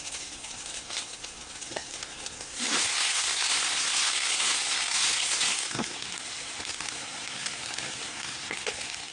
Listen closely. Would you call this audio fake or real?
fake